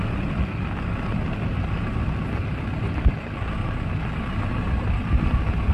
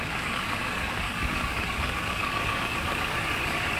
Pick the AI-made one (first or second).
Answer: second